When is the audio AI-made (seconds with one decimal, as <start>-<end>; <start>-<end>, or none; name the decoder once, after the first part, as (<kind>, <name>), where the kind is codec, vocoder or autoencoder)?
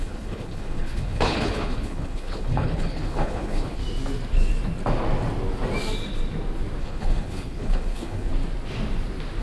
0.0-3.8 (codec, HILCodec); 6.8-8.3